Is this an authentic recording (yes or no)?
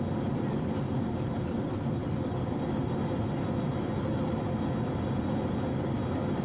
yes